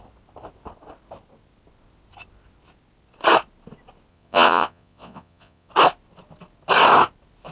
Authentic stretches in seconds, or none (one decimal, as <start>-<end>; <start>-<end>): 0.0-4.1; 5.7-7.5

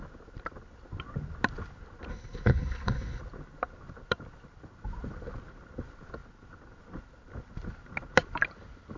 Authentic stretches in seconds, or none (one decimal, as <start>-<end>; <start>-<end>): 0.0-2.1; 3.2-9.0

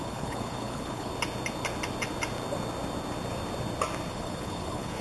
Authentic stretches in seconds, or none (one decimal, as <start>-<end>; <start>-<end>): 1.1-4.1

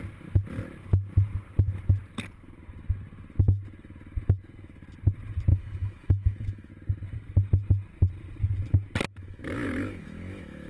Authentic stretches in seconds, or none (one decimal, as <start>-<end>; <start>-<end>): 0.0-5.5; 6.7-9.2

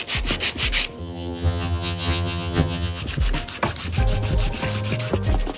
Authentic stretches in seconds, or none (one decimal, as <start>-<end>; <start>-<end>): 0.0-1.0; 3.0-5.6

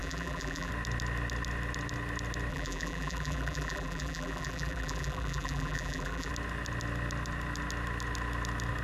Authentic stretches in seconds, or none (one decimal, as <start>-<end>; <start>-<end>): 0.7-2.5; 6.3-8.8

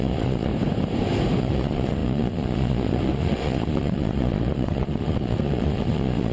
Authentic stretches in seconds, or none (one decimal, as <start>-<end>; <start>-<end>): 0.5-1.4

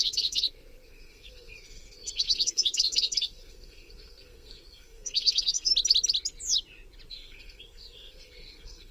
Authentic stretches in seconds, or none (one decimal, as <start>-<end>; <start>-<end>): 5.7-7.1